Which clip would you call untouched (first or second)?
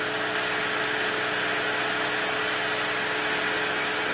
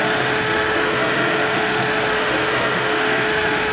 first